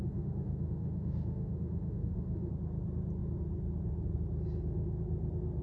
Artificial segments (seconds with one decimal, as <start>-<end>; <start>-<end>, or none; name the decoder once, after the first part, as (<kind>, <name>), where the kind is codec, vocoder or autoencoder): 0.0-2.5 (autoencoder, DAC-VAE)